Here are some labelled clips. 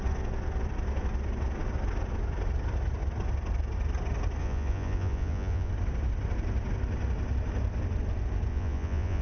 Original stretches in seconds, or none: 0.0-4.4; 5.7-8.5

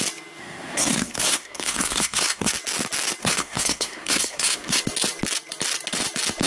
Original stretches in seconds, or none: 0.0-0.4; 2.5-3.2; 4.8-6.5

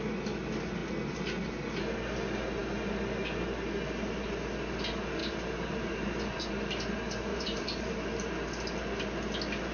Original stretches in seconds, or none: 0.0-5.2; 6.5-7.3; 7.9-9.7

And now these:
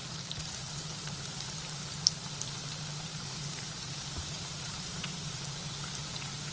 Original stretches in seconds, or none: 1.8-3.1; 5.5-6.5